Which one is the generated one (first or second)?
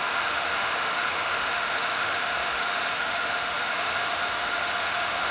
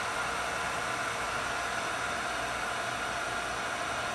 first